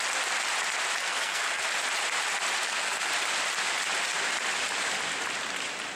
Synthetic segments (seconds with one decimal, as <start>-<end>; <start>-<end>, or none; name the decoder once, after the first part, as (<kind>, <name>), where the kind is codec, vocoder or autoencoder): 1.0-1.6 (codec, SNAC); 2.6-3.1